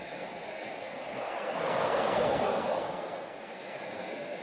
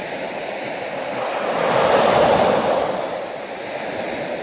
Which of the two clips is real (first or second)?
second